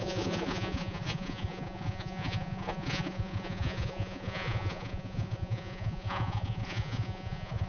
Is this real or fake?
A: fake